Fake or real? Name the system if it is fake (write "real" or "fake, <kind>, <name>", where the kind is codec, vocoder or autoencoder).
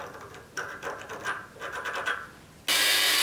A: real